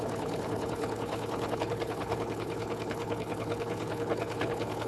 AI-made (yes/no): yes